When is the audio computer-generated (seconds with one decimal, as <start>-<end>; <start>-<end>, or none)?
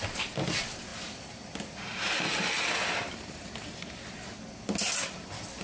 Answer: none